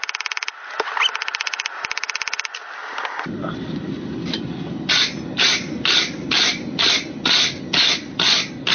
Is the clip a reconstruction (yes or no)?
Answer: no